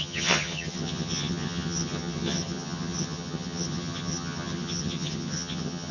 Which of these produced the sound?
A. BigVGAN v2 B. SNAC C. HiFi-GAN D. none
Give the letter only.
C